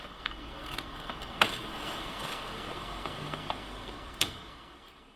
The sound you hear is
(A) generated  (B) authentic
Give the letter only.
A